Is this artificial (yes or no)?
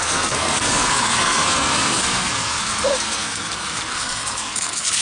yes